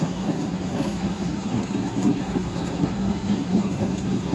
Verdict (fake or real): fake